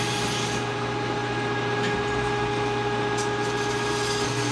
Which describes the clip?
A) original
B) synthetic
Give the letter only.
A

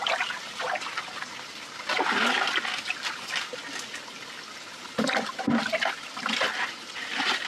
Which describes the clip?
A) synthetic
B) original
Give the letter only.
B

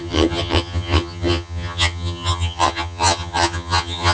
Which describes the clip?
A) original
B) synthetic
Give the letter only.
B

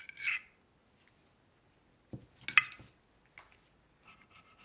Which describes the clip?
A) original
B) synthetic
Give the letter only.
A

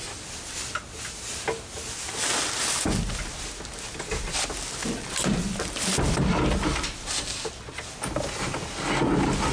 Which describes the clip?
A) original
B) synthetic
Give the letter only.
A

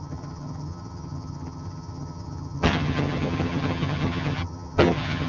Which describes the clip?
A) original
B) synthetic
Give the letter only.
B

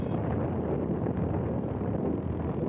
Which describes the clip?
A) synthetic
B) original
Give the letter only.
B